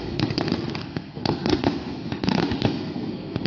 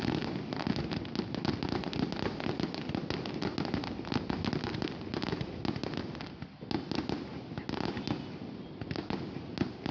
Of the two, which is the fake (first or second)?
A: first